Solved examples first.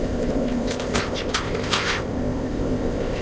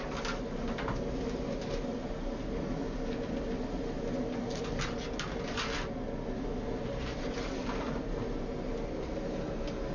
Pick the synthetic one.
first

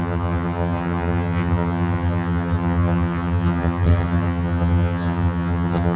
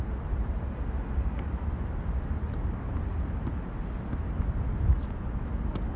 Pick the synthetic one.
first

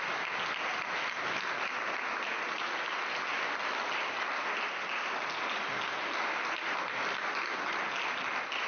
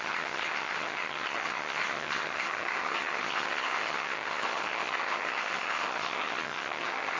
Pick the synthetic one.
second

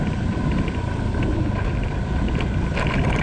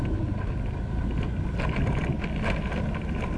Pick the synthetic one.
first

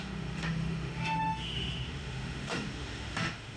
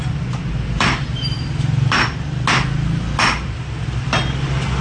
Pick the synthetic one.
first